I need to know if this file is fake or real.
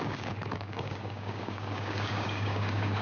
fake